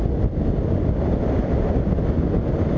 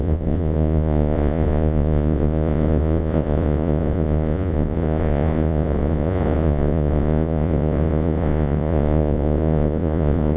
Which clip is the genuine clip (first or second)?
first